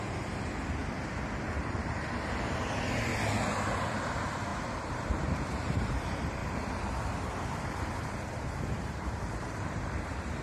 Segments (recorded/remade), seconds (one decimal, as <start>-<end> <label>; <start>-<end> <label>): 0.0-0.8 remade; 0.8-1.6 recorded; 1.6-3.1 remade; 3.1-3.7 recorded; 3.7-10.4 remade